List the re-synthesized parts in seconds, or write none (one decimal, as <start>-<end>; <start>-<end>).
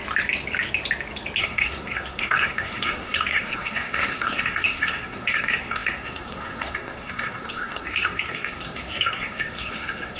1.4-10.2